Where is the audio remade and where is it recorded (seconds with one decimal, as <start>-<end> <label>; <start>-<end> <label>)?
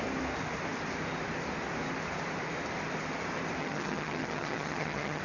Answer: 0.0-3.6 recorded; 3.6-5.2 remade